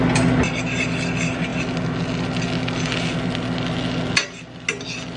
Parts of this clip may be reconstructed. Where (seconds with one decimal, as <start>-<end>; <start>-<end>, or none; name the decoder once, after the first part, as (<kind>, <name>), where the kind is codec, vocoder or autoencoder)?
none